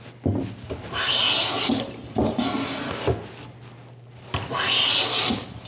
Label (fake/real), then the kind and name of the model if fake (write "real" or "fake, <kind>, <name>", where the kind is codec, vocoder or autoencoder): real